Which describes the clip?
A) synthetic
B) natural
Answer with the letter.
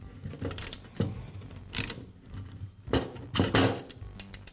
B